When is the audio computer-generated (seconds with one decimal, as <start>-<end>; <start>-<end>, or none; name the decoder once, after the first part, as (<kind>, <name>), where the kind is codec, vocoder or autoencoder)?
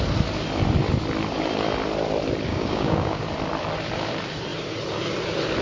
2.5-3.2 (codec, DAC)